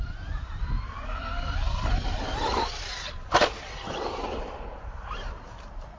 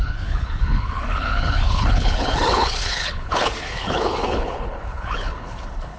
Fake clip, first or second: second